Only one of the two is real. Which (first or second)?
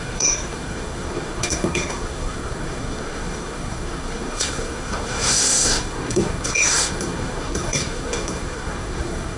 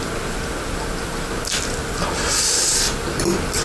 second